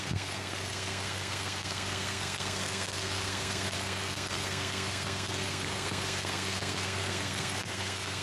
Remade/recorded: remade